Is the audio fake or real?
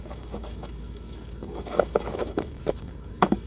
fake